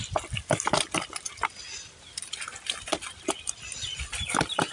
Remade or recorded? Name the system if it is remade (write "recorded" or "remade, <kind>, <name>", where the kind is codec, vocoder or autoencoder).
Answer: recorded